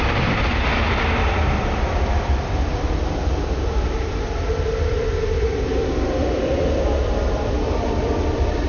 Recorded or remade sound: remade